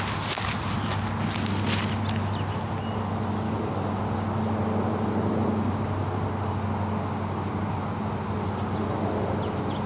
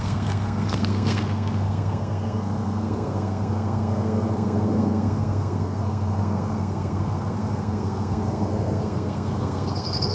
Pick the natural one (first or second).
first